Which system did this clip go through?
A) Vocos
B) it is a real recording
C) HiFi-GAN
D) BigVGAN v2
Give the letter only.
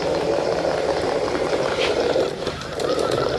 D